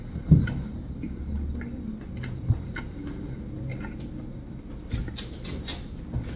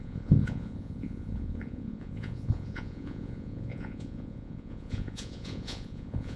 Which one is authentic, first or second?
first